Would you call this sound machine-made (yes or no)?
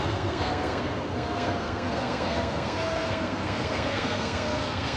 yes